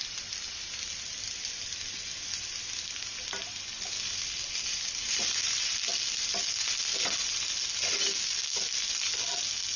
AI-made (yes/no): no